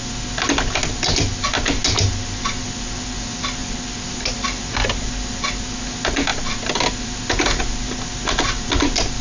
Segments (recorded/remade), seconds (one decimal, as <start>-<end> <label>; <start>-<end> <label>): 0.0-9.2 recorded